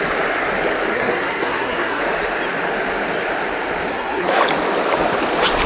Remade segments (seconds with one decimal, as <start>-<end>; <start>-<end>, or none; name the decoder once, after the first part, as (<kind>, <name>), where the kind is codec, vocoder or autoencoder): 0.9-2.0 (codec, SNAC); 3.9-4.4